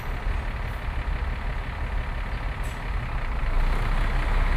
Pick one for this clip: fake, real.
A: real